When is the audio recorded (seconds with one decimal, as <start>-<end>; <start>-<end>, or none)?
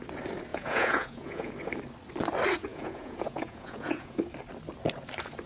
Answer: 0.0-0.5; 1.5-2.7; 4.2-5.5